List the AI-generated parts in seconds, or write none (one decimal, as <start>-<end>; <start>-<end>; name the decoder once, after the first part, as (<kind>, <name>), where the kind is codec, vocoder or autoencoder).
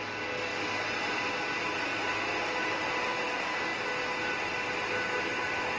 none